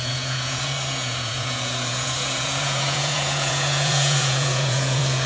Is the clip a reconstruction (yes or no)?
yes